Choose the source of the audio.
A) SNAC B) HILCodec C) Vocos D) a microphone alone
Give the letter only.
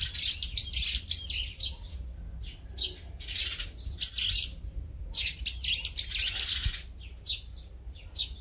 D